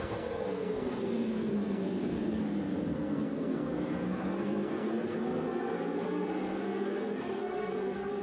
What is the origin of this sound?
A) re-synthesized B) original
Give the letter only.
A